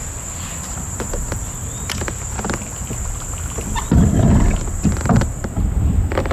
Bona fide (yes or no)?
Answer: yes